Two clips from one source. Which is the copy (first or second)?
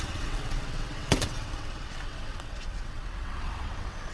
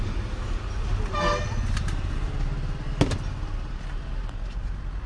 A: first